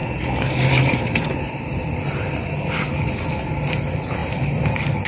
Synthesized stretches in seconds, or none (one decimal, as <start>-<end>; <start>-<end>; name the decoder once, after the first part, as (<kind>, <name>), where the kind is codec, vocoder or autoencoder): 0.0-2.5 (vocoder, BigVGAN v2)